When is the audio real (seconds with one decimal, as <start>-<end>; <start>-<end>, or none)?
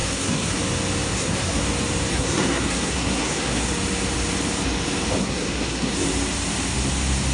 0.6-1.1; 1.6-2.1; 3.7-5.2; 5.9-7.3